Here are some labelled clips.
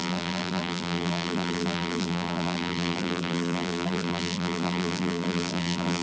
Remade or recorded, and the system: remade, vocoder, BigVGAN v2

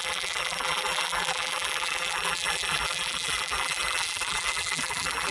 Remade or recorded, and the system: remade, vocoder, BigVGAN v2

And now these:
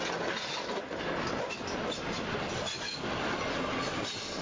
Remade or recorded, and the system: recorded